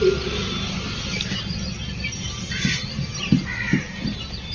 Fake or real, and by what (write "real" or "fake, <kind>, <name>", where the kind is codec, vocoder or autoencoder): real